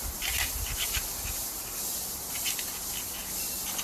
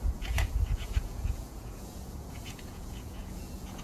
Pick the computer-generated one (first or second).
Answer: second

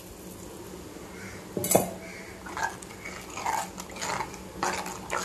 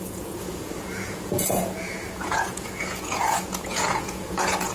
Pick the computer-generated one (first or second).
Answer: second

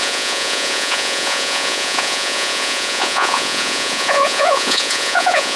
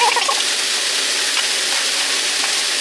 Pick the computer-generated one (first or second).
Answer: first